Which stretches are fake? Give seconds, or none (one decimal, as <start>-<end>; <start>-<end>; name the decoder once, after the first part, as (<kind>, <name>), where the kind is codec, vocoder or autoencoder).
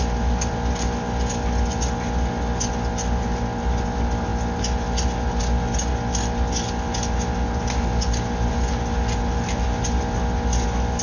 none